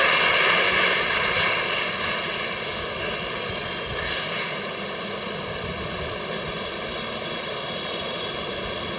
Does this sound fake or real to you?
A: real